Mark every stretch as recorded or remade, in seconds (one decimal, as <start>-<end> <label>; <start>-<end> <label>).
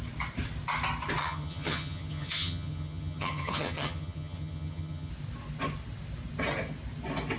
0.0-1.2 recorded; 1.2-5.1 remade; 5.1-7.4 recorded